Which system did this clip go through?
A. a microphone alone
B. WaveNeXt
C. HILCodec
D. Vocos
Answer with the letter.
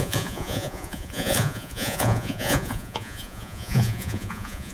D